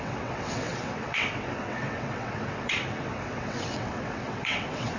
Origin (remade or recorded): remade